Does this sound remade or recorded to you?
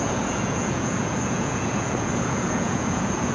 remade